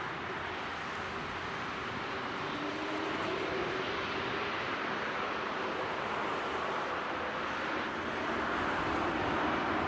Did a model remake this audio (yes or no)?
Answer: no